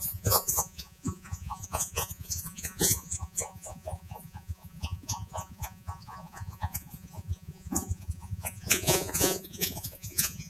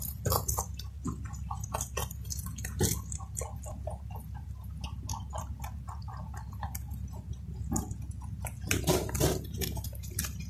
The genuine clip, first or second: second